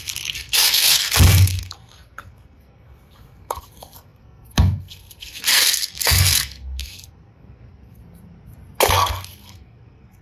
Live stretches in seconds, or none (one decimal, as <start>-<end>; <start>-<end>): 8.0-8.9